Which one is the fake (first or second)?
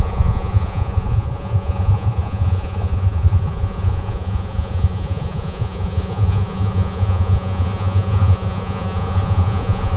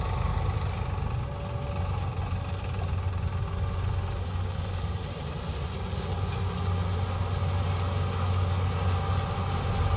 first